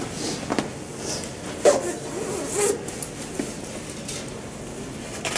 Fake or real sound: real